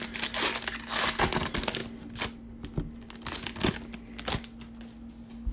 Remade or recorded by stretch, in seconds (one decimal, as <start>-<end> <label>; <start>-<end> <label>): 0.0-5.5 recorded